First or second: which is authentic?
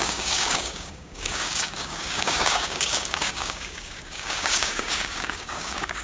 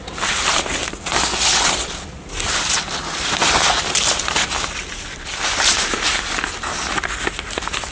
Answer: second